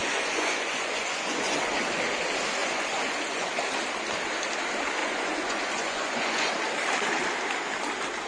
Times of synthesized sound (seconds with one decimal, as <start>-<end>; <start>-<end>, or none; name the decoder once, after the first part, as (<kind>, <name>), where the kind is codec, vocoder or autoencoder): 0.0-1.7 (vocoder, Vocos); 2.6-3.5; 5.0-6.5